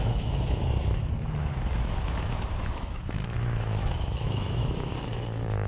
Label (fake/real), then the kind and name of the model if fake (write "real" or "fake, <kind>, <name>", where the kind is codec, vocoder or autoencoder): fake, autoencoder, DAC-VAE